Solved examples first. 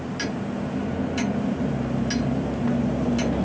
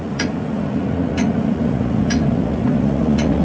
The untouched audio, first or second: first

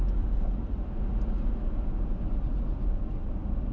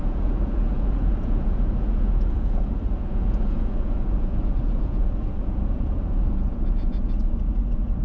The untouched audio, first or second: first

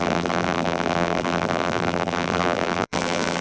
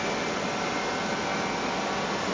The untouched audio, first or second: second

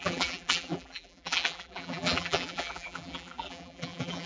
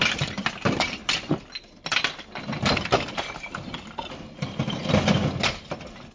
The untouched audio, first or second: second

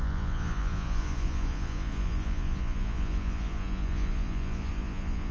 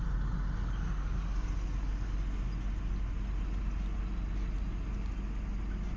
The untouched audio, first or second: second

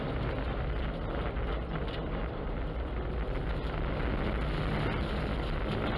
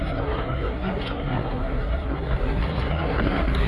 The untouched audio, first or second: first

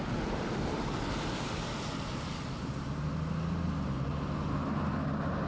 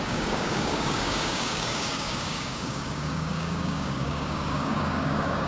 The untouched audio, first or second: first